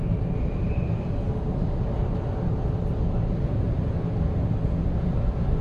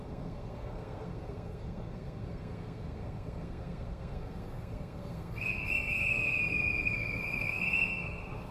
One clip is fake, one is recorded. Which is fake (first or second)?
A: second